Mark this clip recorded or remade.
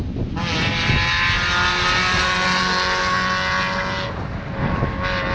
recorded